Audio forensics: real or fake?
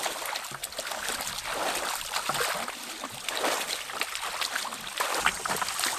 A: real